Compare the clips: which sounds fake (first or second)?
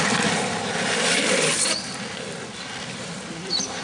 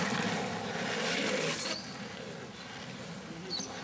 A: first